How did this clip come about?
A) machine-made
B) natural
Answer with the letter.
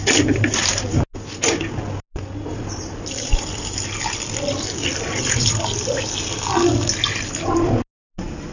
B